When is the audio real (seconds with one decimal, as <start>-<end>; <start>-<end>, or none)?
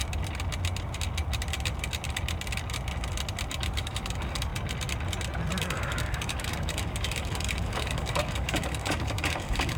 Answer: 0.0-3.5; 4.5-5.6